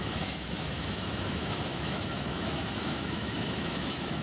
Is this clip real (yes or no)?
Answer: no